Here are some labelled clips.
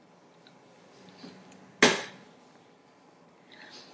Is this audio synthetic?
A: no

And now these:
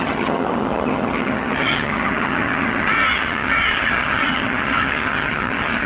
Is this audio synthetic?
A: yes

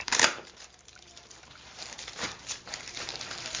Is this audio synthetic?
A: yes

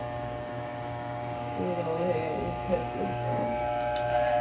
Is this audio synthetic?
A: yes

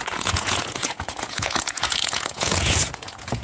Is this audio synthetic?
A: yes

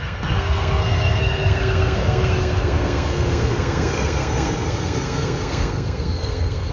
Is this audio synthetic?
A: yes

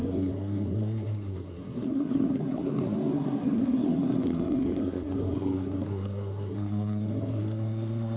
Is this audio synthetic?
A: yes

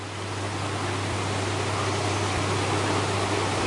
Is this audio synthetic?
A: no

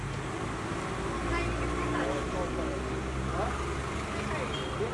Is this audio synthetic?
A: no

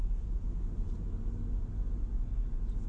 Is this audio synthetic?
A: no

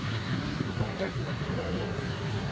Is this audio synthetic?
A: yes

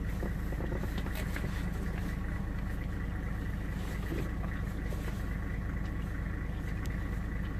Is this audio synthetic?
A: no